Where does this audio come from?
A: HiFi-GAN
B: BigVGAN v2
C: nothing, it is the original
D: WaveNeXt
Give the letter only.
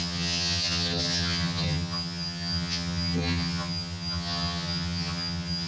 A